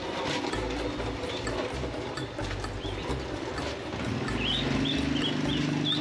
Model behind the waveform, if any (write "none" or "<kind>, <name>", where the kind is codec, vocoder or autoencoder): none